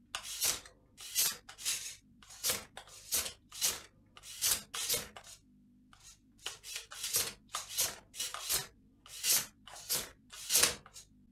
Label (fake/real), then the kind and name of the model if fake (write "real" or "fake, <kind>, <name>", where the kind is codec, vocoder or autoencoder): real